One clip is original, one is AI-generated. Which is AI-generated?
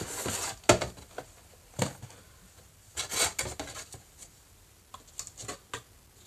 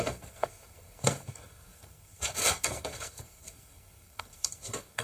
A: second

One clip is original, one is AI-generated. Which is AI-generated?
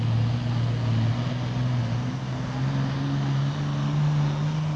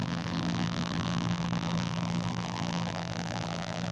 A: second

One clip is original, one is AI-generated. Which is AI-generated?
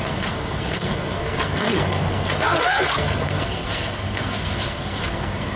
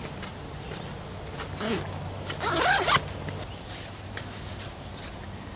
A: first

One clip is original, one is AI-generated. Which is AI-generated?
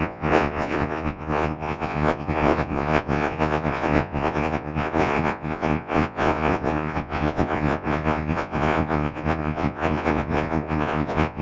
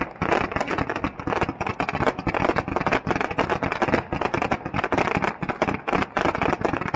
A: first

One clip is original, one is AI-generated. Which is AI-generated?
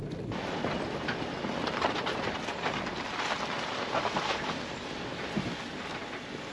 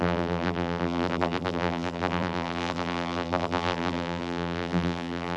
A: second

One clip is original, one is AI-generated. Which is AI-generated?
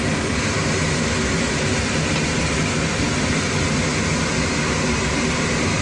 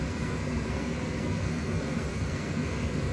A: second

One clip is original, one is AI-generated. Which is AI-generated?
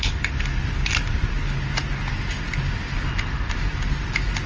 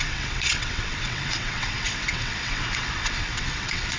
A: second